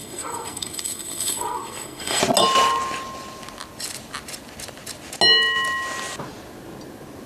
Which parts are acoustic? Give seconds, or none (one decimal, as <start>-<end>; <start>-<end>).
2.2-7.3